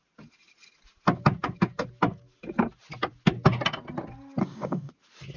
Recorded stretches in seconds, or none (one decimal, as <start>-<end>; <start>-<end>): 0.0-4.4; 4.9-5.4